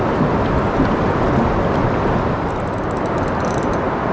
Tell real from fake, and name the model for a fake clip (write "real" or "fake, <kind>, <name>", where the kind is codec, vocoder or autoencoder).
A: real